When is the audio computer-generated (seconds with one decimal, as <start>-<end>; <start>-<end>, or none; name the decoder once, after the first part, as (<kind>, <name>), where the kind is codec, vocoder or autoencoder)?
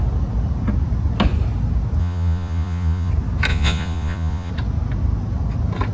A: 2.0-3.1 (vocoder, Vocos); 3.5-4.5